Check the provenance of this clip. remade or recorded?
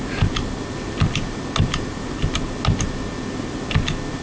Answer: recorded